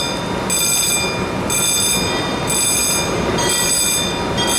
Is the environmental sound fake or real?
real